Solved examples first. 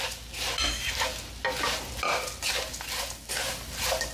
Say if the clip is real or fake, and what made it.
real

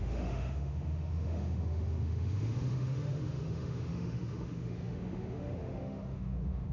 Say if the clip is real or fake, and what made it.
fake, autoencoder, DAC-VAE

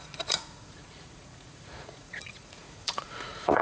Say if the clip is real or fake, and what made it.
fake, vocoder, Vocos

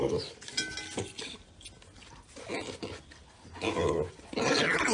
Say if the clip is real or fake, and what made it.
real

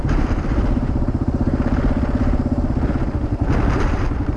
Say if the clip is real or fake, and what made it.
fake, vocoder, BigVGAN v2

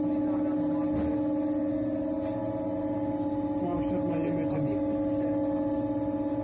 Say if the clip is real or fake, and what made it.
real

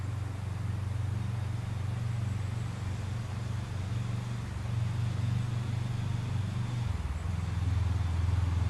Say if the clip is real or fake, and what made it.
real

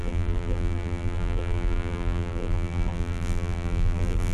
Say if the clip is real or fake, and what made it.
fake, vocoder, BigVGAN v2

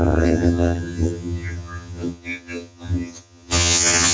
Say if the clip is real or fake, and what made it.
fake, vocoder, HiFi-GAN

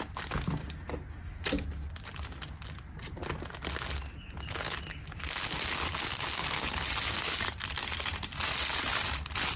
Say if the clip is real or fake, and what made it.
real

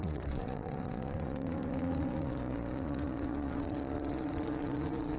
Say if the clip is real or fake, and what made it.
fake, vocoder, Vocos